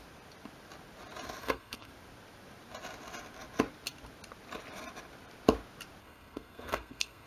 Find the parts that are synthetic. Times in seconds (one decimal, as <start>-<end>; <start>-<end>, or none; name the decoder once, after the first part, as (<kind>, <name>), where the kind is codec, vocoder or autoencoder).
1.4-1.9 (codec, SNAC); 6.0-7.3